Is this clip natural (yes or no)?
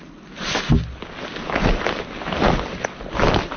yes